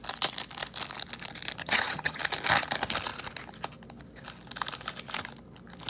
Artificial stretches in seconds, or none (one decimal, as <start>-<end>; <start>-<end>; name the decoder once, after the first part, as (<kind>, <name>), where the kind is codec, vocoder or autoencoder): 1.6-2.2 (vocoder, HiFi-GAN)